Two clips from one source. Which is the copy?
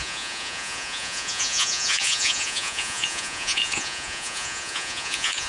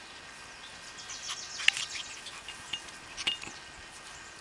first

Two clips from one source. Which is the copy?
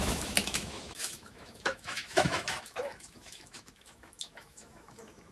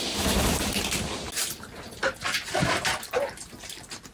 first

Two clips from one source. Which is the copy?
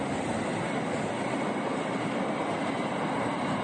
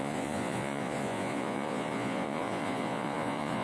second